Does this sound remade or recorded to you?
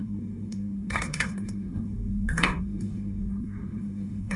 remade